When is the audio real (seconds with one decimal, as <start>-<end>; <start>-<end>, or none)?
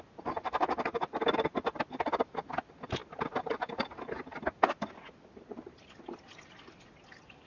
0.0-7.5